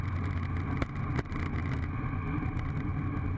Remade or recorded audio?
recorded